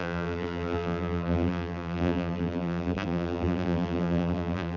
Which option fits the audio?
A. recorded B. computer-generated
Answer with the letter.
B